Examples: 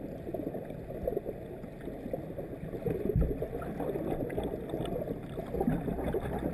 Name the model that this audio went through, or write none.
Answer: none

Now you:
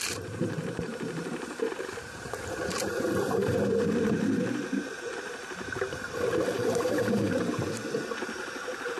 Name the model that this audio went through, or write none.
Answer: vocoder, BigVGAN v2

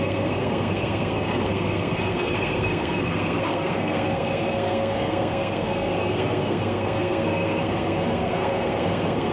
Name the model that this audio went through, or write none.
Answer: codec, SNAC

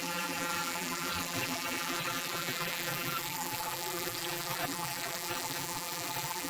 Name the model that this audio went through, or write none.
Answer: vocoder, BigVGAN v2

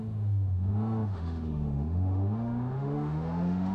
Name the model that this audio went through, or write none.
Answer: autoencoder, DAC-VAE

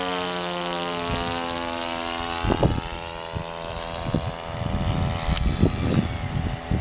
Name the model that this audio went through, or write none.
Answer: none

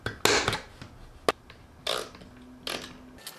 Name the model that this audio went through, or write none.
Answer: none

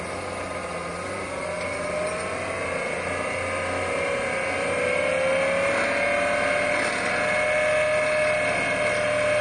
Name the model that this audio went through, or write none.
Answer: none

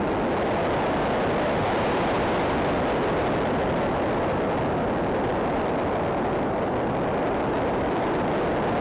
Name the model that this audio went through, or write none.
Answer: none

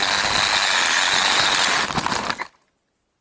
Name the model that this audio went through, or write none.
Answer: none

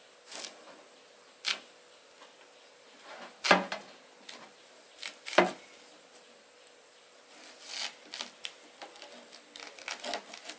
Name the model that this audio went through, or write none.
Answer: none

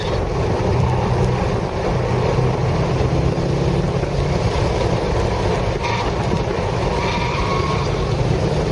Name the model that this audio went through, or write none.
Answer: none